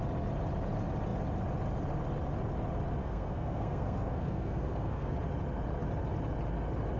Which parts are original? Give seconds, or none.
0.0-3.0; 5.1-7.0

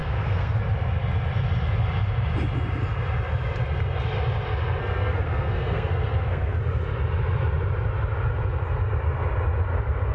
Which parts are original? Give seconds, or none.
0.6-4.8; 6.6-10.1

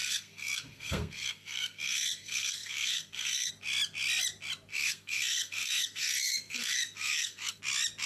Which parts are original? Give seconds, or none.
3.5-4.7; 7.6-8.1

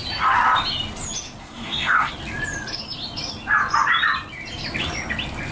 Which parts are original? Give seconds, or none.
0.0-1.4; 2.1-5.5

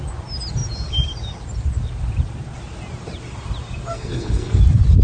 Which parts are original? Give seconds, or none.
0.0-3.9; 4.6-5.0

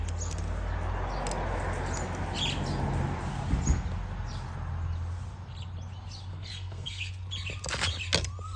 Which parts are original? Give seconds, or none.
0.0-6.3; 7.1-8.6